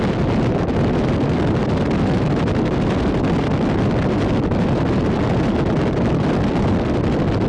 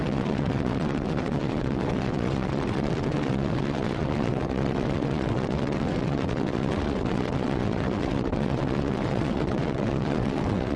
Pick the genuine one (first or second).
first